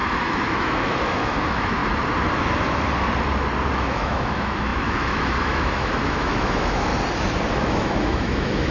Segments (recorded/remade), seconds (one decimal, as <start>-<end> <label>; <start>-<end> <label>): 0.0-1.8 remade; 1.8-3.7 recorded; 3.7-6.9 remade; 6.9-7.5 recorded; 7.5-8.7 remade